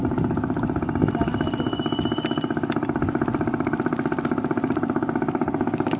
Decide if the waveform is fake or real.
real